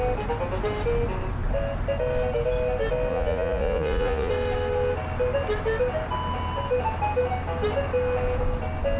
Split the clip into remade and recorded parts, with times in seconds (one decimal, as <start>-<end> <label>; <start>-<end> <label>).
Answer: 0.0-3.1 recorded; 3.1-4.3 remade; 4.3-9.0 recorded